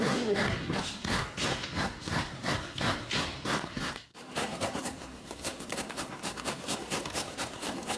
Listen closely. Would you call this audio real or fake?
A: fake